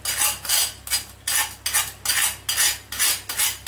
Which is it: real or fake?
real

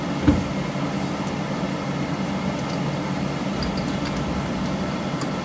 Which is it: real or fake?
real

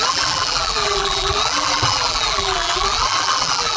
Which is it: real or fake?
fake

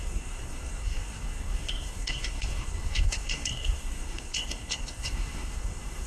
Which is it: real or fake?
fake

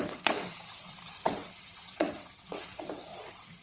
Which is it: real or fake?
fake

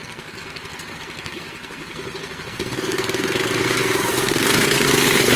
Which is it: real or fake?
fake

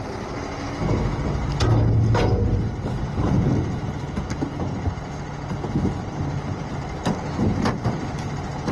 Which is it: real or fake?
real